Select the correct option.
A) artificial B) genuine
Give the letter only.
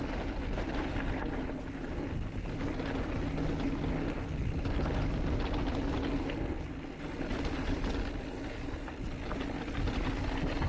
B